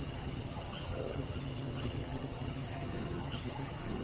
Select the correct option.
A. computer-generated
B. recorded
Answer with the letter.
A